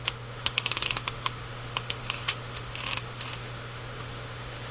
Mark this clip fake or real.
fake